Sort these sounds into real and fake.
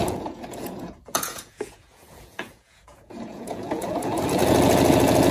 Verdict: fake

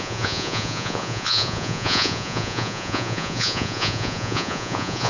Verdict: fake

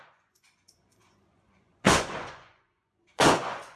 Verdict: fake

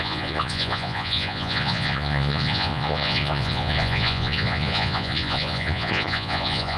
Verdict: fake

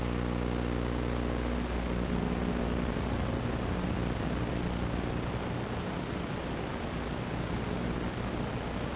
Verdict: real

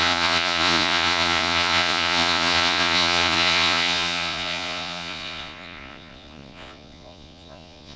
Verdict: fake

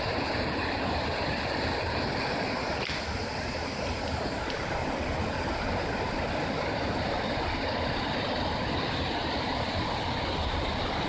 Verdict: real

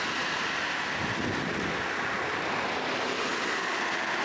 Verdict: real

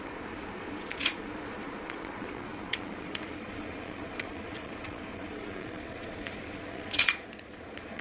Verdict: fake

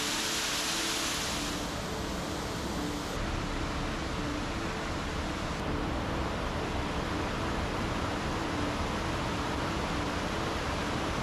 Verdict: real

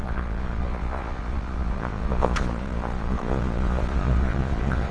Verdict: fake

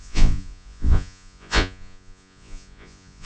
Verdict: fake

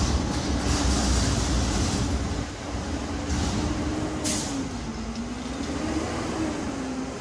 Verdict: real